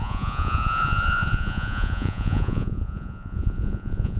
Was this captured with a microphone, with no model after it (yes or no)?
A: no